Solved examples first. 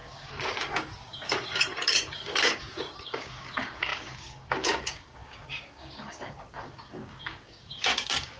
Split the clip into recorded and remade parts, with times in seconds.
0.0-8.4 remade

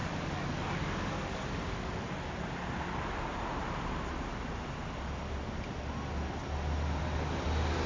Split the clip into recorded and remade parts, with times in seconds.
0.0-2.1 remade; 2.1-7.9 recorded

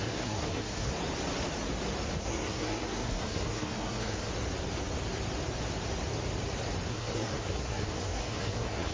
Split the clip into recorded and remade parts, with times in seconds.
0.0-0.9 remade; 0.9-2.2 recorded; 2.2-4.3 remade; 4.3-6.9 recorded; 6.9-8.9 remade

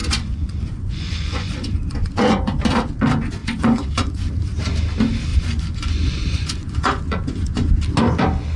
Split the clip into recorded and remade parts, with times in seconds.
0.0-2.6 remade; 2.6-3.4 recorded; 3.4-4.3 remade; 4.3-5.3 recorded; 5.3-7.7 remade; 7.7-8.6 recorded

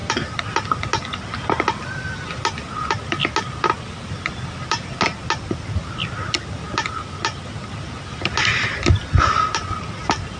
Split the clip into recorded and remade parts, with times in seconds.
0.0-10.4 recorded

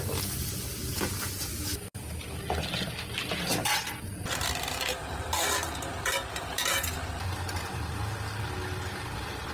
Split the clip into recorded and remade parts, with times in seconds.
0.0-1.5 recorded; 1.5-2.4 remade; 2.4-9.5 recorded

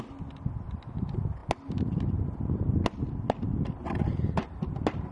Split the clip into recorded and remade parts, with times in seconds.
0.0-5.1 recorded

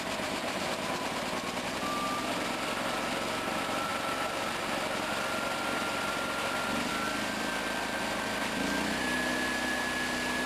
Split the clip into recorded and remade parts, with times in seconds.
0.0-10.5 recorded